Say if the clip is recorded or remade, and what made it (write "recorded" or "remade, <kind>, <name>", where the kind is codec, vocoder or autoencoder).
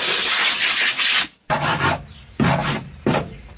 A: recorded